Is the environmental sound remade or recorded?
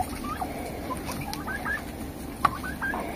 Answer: recorded